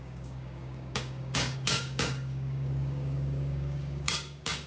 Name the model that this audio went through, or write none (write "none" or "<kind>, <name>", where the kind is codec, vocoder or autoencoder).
codec, DAC